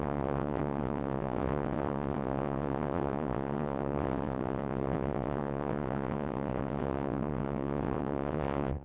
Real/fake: fake